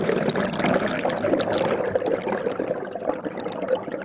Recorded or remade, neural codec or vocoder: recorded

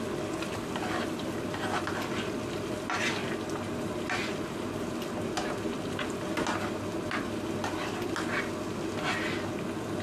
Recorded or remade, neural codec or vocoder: recorded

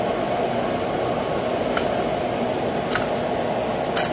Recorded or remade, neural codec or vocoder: recorded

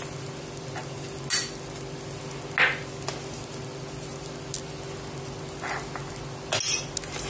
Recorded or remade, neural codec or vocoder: recorded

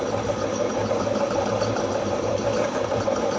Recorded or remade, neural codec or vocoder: remade, vocoder, BigVGAN v2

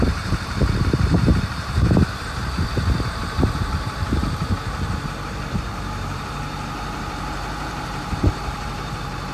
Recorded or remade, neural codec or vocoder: remade, vocoder, BigVGAN v2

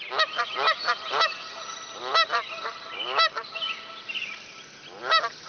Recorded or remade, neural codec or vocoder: recorded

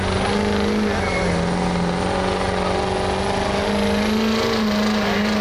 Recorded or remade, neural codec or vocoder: recorded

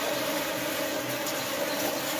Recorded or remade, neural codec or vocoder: recorded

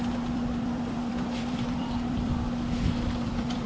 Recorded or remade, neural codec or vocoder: remade, vocoder, BigVGAN v2